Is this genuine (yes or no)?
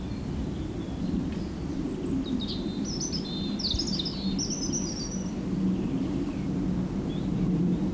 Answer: yes